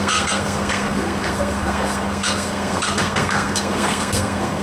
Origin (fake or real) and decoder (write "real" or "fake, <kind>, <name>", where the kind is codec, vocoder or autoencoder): fake, codec, SNAC